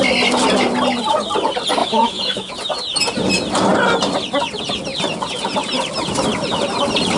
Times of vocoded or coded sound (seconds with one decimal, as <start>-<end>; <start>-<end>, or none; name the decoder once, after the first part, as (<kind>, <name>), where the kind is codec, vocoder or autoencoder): 1.8-2.5 (autoencoder, DAC-VAE)